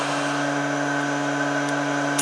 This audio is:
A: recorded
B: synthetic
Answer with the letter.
A